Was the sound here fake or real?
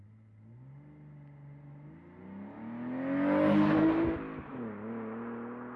real